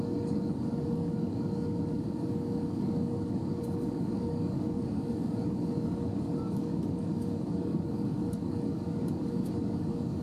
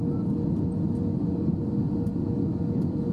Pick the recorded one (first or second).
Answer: second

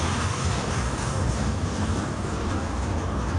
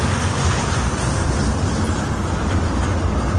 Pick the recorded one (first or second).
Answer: second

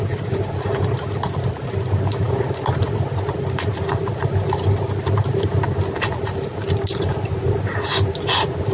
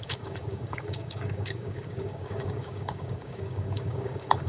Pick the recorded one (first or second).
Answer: first